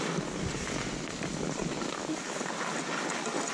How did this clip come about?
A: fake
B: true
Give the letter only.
B